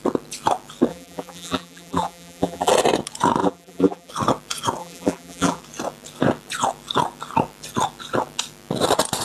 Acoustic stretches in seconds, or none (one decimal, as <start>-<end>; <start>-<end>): 0.0-0.9; 2.7-3.4; 4.1-4.8; 5.6-9.2

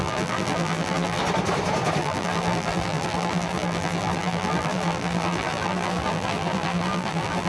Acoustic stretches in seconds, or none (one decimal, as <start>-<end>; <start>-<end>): 1.2-2.0

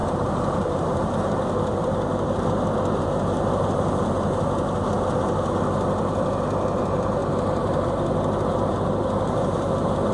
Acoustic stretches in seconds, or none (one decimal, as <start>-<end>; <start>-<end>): 2.5-7.2; 7.9-8.5